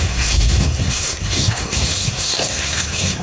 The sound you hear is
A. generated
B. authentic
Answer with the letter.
A